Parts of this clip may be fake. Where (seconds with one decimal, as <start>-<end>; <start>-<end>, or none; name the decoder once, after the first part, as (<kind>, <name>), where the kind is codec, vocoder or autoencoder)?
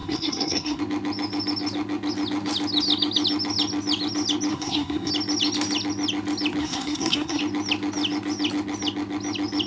0.0-0.8 (codec, SNAC); 4.5-5.1; 6.6-7.4